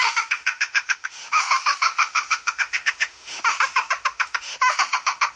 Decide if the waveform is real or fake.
fake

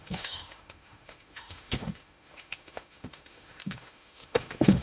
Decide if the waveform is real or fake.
fake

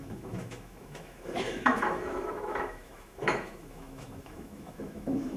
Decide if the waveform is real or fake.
fake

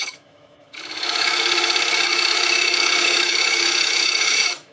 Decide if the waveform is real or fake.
fake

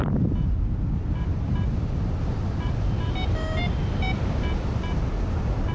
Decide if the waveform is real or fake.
real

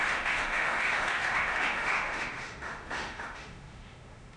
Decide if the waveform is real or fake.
fake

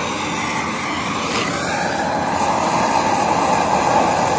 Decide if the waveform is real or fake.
real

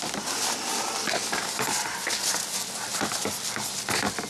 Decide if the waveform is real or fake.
real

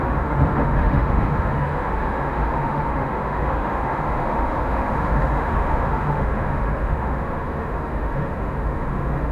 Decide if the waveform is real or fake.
fake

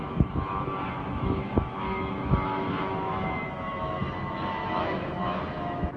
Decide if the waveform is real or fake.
fake